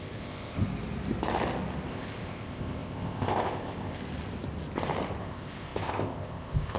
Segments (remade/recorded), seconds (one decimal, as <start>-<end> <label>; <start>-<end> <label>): 0.0-0.6 remade; 0.6-1.9 recorded; 1.9-4.0 remade; 4.0-5.2 recorded; 5.2-6.8 remade